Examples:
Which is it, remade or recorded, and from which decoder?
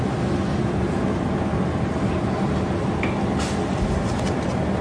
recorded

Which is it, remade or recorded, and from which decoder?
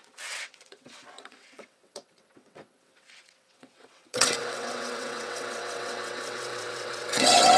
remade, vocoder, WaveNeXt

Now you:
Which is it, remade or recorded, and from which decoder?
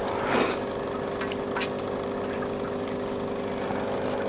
recorded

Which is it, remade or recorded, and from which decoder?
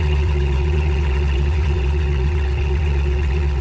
remade, vocoder, WaveNeXt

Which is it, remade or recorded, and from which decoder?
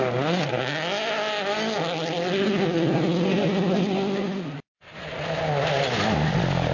recorded